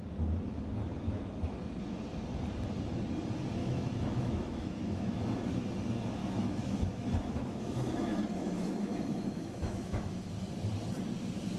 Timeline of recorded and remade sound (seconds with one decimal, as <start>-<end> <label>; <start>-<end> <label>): 0.0-3.6 recorded; 3.6-5.5 remade; 5.5-6.2 recorded; 6.2-10.3 remade; 10.3-11.6 recorded